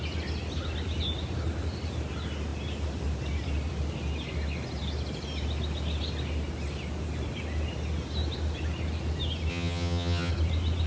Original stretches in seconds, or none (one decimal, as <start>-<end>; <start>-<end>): 0.0-9.5; 10.3-10.9